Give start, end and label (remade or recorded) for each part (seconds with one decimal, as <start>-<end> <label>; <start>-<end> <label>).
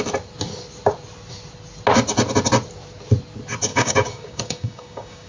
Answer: 0.0-3.7 recorded; 3.7-5.3 remade